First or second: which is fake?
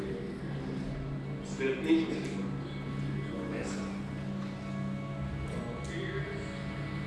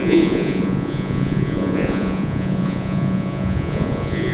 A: second